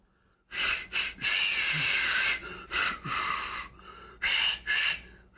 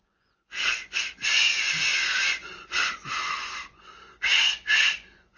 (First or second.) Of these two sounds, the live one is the first